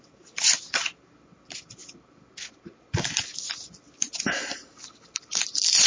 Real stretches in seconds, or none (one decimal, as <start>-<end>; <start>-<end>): 0.0-5.9